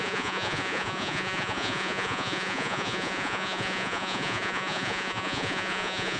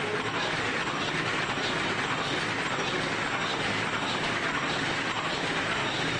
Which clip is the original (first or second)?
second